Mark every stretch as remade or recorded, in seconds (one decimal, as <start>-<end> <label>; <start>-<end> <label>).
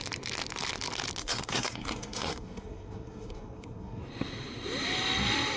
0.0-1.2 recorded; 1.2-4.0 remade; 4.0-5.6 recorded